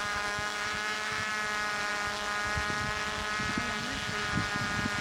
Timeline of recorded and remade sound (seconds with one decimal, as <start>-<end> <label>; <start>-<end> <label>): 0.0-1.3 remade; 1.3-5.0 recorded